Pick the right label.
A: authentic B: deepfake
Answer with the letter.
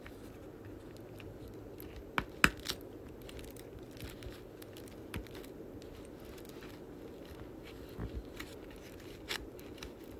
A